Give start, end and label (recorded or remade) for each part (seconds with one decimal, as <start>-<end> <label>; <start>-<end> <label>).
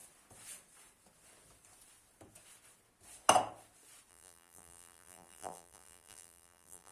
0.0-4.1 recorded; 4.1-6.9 remade